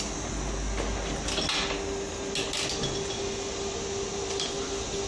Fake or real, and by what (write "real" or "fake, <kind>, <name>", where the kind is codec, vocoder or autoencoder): real